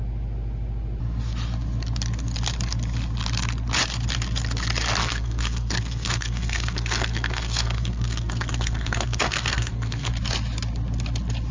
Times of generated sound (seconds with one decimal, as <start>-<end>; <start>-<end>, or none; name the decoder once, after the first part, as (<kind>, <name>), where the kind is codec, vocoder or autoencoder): 5.0-10.1 (codec, SNAC)